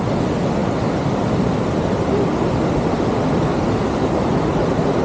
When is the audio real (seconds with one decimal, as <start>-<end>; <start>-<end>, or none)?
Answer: 0.0-5.0